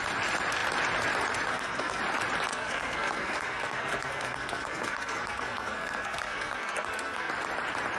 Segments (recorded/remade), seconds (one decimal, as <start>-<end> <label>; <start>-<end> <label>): 0.0-1.5 recorded; 1.5-2.0 remade; 2.0-2.5 recorded; 2.5-7.3 remade; 7.3-8.0 recorded